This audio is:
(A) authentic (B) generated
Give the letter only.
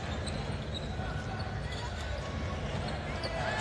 A